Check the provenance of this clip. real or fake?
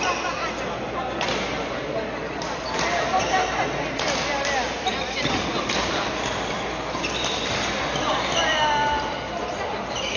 real